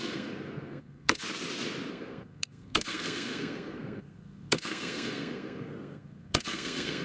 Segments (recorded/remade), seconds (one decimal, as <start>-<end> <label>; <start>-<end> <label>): 0.0-1.2 remade; 1.2-1.9 recorded; 1.9-7.0 remade